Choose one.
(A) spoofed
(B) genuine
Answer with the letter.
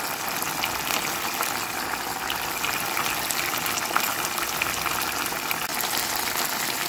B